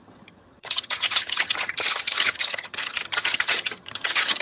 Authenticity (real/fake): fake